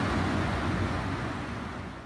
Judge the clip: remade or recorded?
remade